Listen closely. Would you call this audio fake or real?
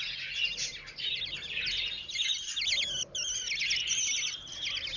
real